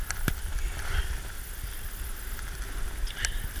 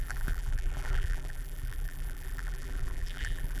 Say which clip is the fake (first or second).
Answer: second